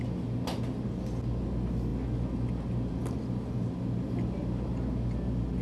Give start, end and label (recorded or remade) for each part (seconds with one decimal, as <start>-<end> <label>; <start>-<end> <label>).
0.0-5.6 recorded

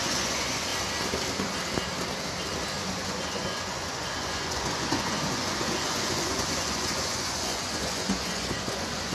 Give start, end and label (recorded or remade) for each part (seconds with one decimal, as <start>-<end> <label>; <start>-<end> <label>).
0.0-0.7 remade; 0.7-2.9 recorded; 2.9-9.1 remade

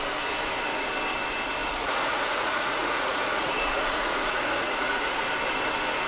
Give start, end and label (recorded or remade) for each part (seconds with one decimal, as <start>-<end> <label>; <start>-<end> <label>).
0.0-1.6 recorded; 1.6-5.2 remade; 5.2-6.1 recorded

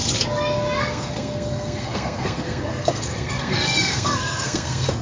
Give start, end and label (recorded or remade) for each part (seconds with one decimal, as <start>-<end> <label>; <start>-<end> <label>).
0.0-0.8 recorded; 0.8-5.0 remade